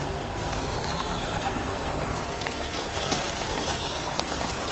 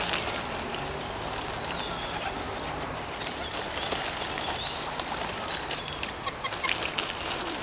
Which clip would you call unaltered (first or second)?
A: second